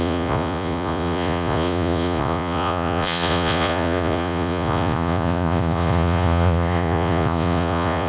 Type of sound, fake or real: fake